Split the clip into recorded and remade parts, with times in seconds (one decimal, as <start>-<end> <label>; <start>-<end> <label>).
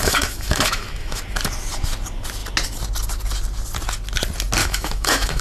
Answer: 0.0-1.2 remade; 1.2-4.6 recorded; 4.6-5.4 remade